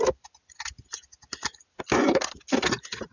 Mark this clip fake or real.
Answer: real